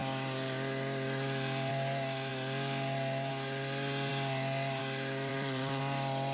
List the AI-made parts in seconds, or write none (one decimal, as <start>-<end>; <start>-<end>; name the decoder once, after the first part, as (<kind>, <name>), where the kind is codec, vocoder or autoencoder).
5.3-5.8 (vocoder, Vocos)

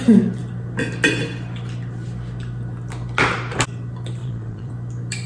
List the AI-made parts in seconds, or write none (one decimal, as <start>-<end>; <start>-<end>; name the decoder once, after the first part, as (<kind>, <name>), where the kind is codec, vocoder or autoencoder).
4.2-4.7 (vocoder, Vocos)

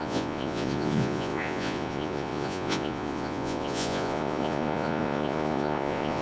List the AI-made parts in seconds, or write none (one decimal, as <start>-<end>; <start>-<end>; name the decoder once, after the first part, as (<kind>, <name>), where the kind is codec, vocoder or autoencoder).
0.0-6.2 (vocoder, Vocos)